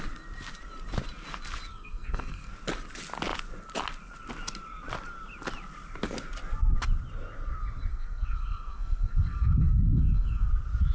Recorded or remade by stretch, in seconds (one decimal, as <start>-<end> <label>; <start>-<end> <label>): 0.0-1.7 recorded; 1.7-2.5 remade; 2.5-7.9 recorded; 7.9-10.5 remade; 10.5-10.9 recorded